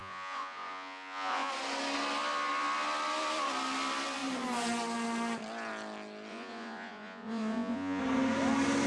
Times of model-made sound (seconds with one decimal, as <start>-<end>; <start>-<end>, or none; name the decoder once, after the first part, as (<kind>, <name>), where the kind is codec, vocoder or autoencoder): 0.0-1.5 (vocoder, Vocos); 6.3-8.0